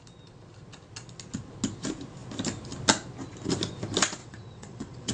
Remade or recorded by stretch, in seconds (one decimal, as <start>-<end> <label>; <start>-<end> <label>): 0.0-4.2 recorded; 4.2-5.1 remade